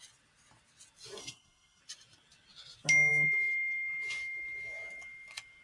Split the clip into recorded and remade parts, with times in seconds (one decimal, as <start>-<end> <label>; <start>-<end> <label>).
0.0-1.2 recorded; 1.2-1.8 remade; 1.8-5.6 recorded